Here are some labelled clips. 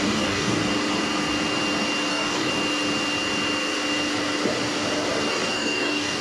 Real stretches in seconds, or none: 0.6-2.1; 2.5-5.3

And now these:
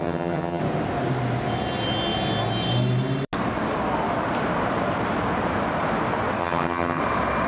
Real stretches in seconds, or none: 0.6-6.4; 7.0-7.5